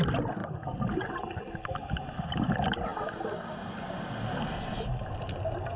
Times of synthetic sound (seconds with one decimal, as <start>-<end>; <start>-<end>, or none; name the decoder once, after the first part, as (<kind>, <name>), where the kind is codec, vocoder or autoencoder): none